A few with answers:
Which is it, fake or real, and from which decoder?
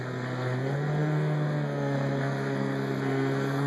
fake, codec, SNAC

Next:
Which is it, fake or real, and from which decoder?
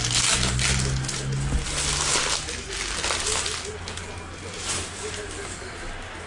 real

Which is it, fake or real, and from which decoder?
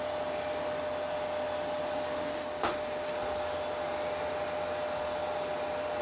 real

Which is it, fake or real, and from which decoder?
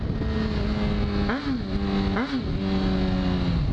real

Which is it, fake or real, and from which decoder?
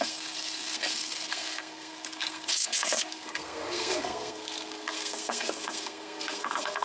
fake, codec, SNAC